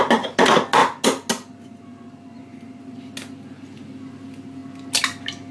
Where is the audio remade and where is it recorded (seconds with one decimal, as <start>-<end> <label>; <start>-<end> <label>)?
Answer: 0.0-5.5 recorded